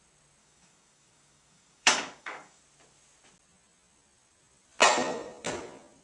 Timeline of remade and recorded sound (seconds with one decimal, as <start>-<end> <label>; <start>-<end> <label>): 0.0-0.4 recorded; 0.4-2.6 remade; 2.6-6.0 recorded